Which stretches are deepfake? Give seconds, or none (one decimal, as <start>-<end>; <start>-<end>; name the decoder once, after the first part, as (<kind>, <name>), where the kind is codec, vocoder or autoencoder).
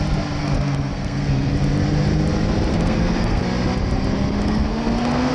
0.4-1.5 (codec, SNAC); 2.7-3.4; 4.4-5.3